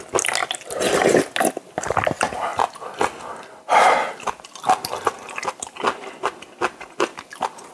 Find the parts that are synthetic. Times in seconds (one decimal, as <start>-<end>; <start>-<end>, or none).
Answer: none